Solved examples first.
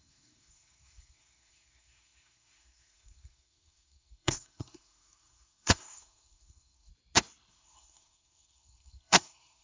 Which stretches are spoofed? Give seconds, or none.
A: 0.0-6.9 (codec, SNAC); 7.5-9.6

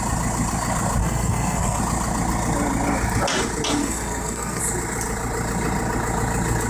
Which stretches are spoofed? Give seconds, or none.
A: 1.0-1.8 (codec, SNAC); 3.8-4.6

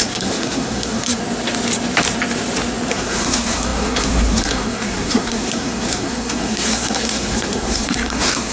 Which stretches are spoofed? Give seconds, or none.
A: 0.0-1.2 (codec, SNAC); 2.9-8.5